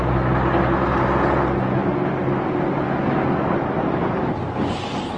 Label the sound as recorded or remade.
recorded